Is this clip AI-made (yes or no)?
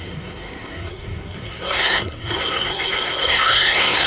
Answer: yes